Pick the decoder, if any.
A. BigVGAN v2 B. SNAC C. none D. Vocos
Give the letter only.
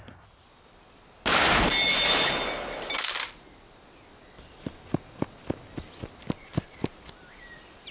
C